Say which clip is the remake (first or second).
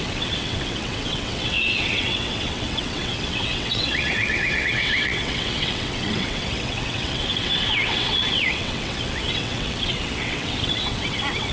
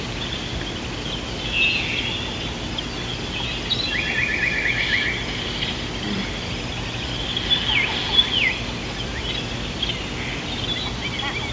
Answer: first